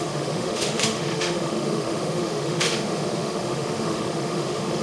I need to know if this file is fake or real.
fake